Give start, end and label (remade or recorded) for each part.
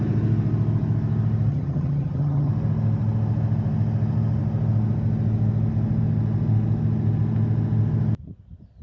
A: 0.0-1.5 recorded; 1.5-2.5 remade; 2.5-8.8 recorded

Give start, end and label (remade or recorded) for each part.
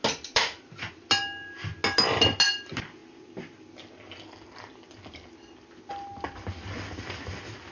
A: 0.0-7.7 recorded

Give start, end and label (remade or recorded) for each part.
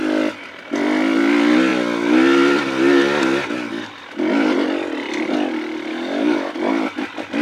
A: 0.0-5.9 recorded; 5.9-6.5 remade; 6.5-7.4 recorded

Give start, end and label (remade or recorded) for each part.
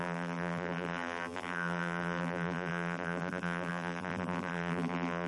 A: 0.0-5.3 remade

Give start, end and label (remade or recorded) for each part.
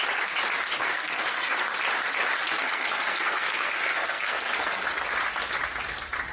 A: 0.0-0.8 recorded; 0.8-1.6 remade; 1.6-2.5 recorded; 2.5-4.9 remade; 4.9-6.3 recorded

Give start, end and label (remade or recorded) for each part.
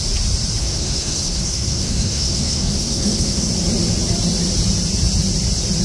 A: 0.0-0.6 recorded; 0.6-3.5 remade; 3.5-5.8 recorded